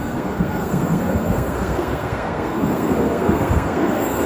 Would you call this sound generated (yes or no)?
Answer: yes